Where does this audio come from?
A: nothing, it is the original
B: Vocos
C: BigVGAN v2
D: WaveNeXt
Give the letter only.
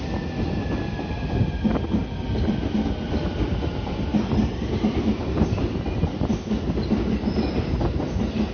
A